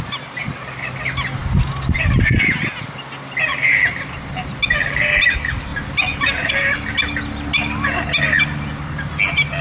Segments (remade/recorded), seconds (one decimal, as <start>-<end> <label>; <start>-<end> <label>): 0.0-9.6 recorded